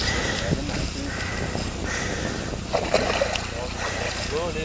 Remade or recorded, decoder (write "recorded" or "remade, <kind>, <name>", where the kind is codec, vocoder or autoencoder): recorded